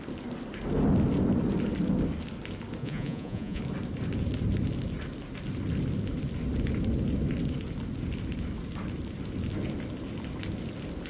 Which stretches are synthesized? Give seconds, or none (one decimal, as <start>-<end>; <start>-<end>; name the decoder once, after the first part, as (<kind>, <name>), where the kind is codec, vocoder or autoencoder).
2.8-3.6 (vocoder, Vocos)